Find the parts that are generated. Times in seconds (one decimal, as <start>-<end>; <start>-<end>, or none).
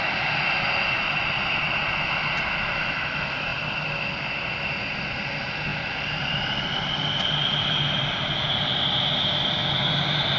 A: none